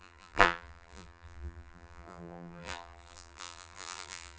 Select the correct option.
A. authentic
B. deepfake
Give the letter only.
B